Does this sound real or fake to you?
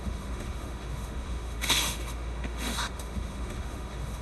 fake